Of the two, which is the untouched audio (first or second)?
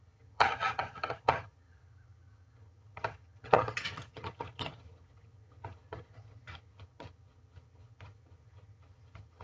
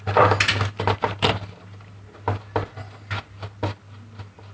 second